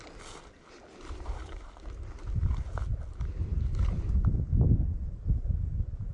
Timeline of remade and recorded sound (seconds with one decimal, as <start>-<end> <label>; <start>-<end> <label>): 0.0-6.1 recorded